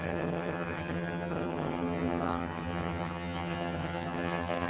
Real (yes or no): no